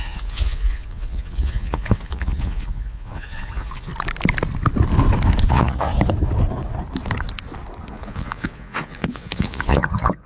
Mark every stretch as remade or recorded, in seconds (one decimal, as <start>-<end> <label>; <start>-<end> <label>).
0.0-3.9 remade; 3.9-5.5 recorded; 5.5-5.9 remade; 5.9-7.9 recorded; 7.9-10.3 remade